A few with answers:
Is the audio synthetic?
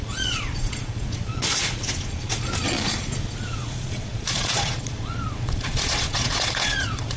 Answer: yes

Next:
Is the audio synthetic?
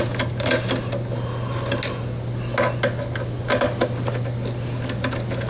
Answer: no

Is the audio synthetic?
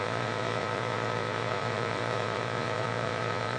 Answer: yes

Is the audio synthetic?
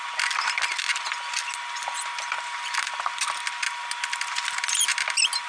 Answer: no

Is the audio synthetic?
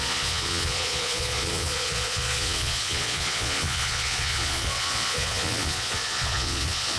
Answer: yes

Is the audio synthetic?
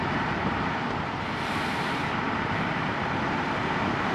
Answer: no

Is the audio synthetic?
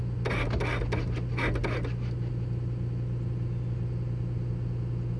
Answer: no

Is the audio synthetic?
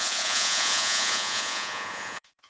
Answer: yes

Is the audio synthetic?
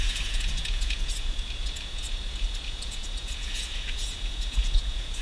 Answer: yes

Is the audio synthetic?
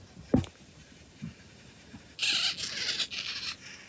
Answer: no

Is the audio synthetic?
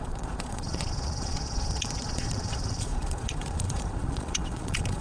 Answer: yes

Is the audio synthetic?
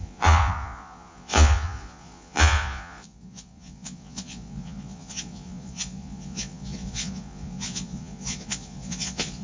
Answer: yes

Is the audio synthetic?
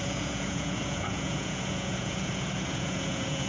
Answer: yes